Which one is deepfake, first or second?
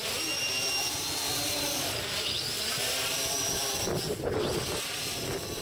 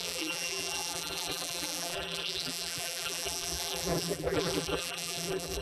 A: second